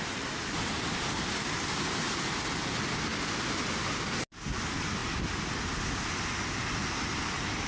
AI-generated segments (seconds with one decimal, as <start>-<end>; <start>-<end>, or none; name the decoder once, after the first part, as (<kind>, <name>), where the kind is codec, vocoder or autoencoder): none